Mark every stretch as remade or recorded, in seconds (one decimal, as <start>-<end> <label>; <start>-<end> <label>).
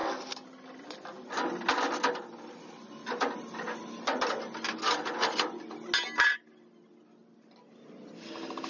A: 0.0-8.7 recorded